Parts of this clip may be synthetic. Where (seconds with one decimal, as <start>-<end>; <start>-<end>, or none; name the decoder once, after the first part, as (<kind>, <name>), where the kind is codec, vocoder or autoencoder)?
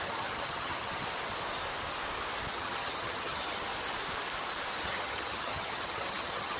0.0-1.0 (vocoder, HiFi-GAN); 2.5-3.7; 4.8-6.6